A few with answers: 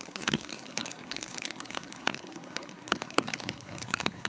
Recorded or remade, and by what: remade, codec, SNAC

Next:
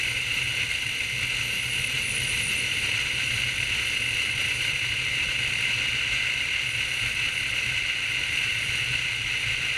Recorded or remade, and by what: recorded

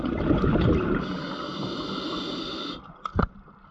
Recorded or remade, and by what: recorded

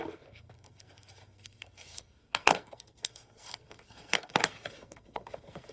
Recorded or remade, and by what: remade, codec, SNAC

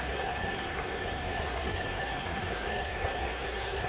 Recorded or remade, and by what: remade, codec, SNAC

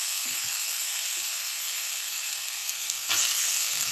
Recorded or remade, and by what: remade, codec, SNAC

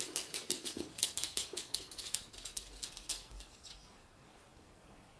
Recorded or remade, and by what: remade, codec, SNAC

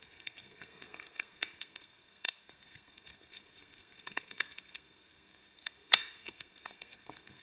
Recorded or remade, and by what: remade, codec, SNAC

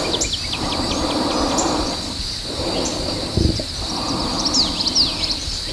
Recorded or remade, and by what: recorded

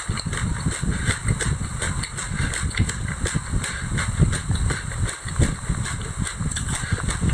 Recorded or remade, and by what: recorded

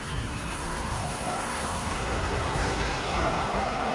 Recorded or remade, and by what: remade, codec, SNAC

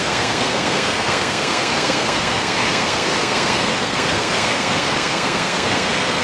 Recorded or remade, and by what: remade, codec, SNAC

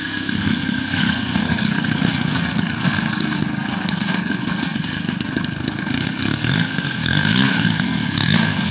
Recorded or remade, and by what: remade, codec, SNAC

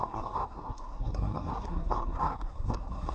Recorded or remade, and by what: remade, codec, SNAC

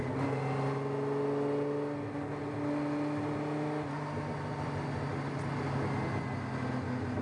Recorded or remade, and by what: recorded